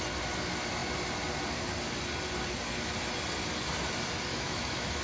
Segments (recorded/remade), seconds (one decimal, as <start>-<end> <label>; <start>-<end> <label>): 0.0-4.3 recorded; 4.3-5.0 remade